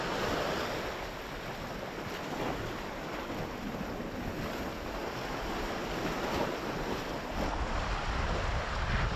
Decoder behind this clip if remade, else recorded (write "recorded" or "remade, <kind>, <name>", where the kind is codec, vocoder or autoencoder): recorded